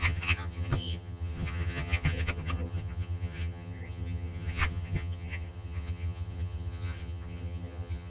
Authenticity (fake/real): fake